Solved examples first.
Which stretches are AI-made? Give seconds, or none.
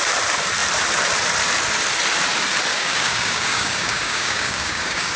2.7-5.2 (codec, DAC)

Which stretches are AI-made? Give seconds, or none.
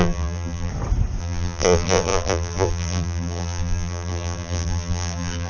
0.0-0.7 (vocoder, BigVGAN v2); 1.2-5.5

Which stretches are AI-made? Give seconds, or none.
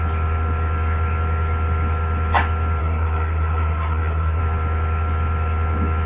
2.8-4.4 (codec, SNAC)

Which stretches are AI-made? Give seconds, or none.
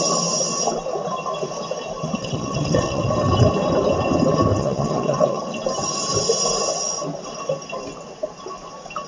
2.0-3.1 (vocoder, WaveNeXt); 4.5-5.6